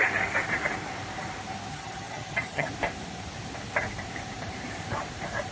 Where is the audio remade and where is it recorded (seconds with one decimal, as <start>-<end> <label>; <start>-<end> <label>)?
0.0-1.7 recorded; 1.7-2.7 remade; 2.7-5.5 recorded